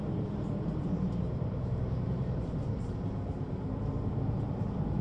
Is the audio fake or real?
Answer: fake